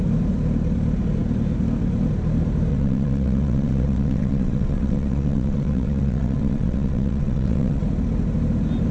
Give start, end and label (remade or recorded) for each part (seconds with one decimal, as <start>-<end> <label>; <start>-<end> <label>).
0.0-2.7 recorded; 2.7-7.8 remade; 7.8-8.9 recorded